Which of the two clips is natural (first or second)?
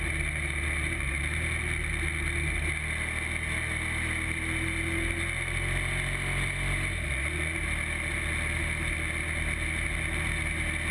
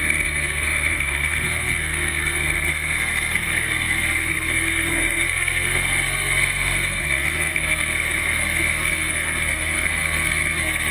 first